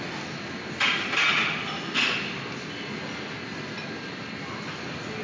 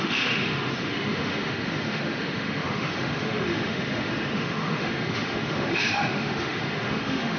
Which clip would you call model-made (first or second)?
second